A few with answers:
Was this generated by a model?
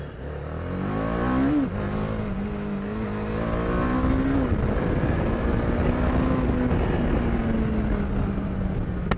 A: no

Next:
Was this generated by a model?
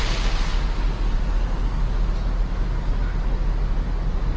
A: no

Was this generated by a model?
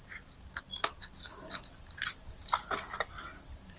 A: no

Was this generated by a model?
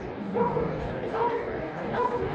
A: yes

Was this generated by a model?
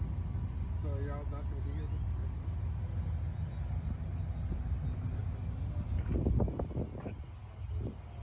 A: no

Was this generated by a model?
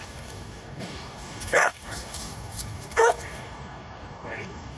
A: yes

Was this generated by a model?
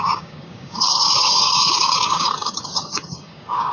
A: yes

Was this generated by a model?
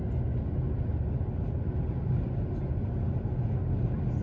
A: no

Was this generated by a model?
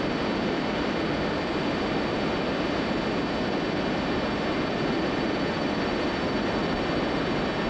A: no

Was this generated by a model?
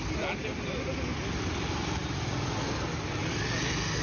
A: no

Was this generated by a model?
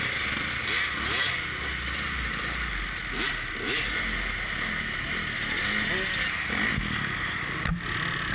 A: no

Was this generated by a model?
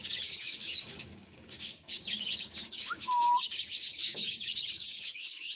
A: yes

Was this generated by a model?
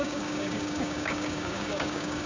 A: yes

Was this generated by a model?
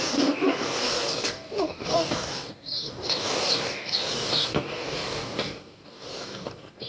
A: yes